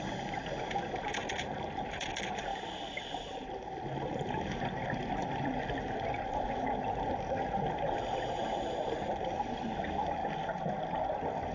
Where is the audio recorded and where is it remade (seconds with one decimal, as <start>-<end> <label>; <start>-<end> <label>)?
0.0-11.5 recorded